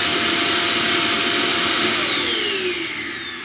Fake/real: real